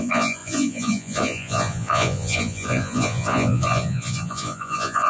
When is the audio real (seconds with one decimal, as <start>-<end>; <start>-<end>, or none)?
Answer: none